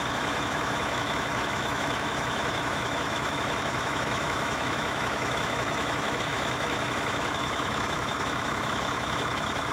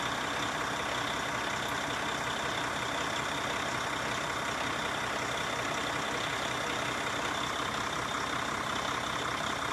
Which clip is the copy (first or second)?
first